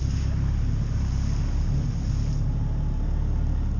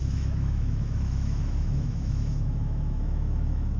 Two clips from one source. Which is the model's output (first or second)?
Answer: second